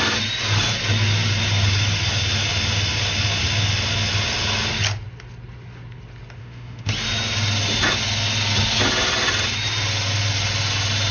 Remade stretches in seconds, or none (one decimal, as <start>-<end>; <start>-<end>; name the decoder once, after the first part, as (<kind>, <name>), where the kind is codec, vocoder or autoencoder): 6.4-6.9 (autoencoder, DAC-VAE)